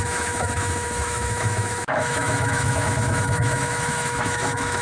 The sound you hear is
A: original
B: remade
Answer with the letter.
B